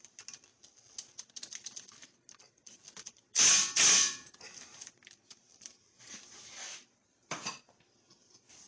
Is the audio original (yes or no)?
yes